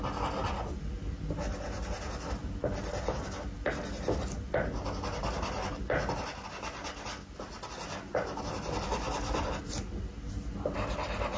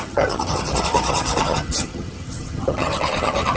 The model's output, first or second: second